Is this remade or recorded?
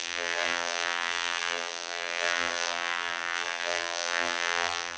remade